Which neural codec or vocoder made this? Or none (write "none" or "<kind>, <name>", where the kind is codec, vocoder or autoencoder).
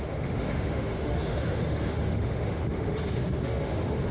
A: autoencoder, DAC-VAE